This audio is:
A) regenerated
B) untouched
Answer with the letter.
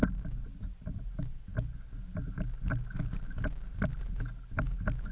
B